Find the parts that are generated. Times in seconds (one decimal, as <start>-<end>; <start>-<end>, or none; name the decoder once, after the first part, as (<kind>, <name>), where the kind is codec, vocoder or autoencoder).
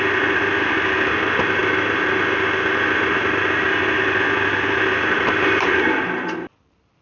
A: 1.6-5.8 (vocoder, BigVGAN v2)